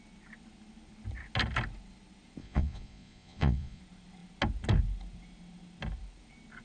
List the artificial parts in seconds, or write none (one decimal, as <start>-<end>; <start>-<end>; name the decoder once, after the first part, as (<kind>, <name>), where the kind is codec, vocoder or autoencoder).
2.4-3.8 (vocoder, Vocos)